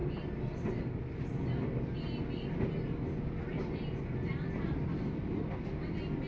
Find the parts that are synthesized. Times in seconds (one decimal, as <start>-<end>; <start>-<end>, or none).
none